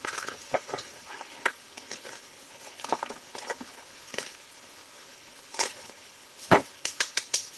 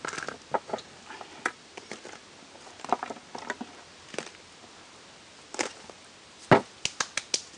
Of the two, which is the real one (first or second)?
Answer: second